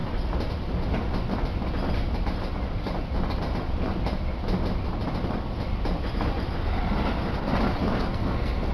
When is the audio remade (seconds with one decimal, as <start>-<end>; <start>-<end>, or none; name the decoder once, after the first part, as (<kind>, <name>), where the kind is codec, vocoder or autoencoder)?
8.0-8.7 (codec, SNAC)